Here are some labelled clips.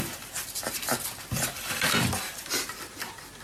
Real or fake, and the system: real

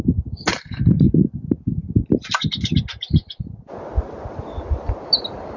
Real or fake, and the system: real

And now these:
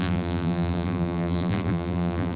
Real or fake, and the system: fake, vocoder, BigVGAN v2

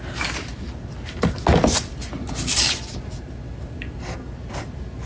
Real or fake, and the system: real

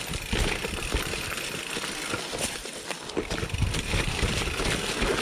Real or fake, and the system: real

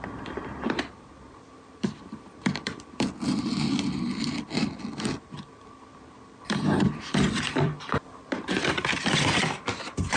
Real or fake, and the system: fake, vocoder, BigVGAN v2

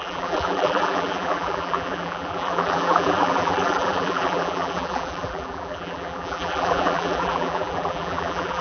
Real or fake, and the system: fake, vocoder, BigVGAN v2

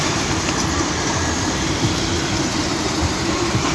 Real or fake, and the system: fake, vocoder, BigVGAN v2